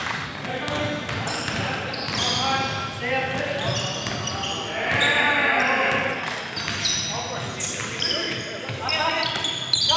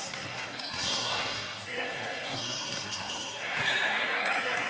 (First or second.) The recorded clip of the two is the first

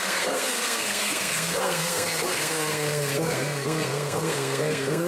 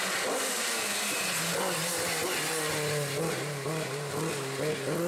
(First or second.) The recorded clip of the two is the second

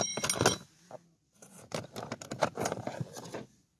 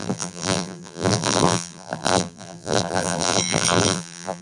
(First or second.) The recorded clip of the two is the first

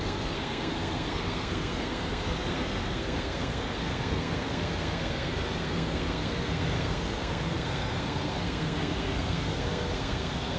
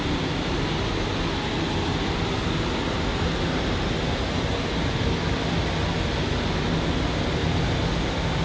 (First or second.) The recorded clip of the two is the second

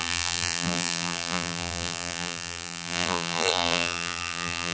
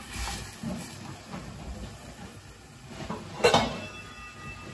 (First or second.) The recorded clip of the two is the second